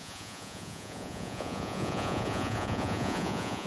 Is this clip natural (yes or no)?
no